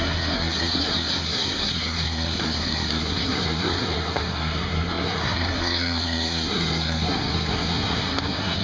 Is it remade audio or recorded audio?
remade